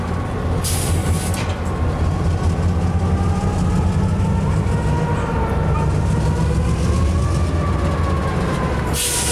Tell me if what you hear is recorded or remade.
recorded